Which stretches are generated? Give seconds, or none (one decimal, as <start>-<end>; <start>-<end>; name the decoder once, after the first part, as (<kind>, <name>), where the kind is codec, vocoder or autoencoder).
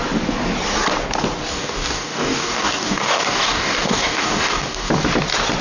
1.5-4.9 (codec, DAC)